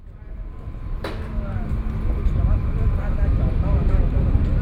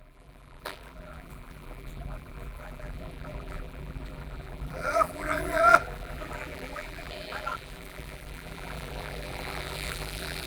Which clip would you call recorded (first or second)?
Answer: first